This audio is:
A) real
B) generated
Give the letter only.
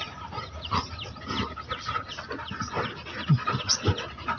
A